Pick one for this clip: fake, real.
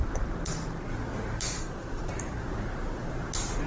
real